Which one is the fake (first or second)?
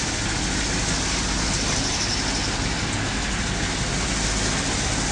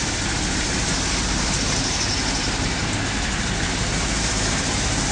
second